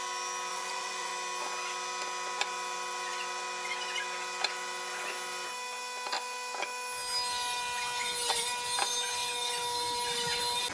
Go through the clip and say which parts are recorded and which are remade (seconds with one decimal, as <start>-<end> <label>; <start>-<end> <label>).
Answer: 0.0-0.5 recorded; 0.5-1.1 remade; 1.1-10.7 recorded